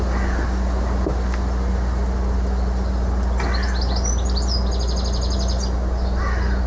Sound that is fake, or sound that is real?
real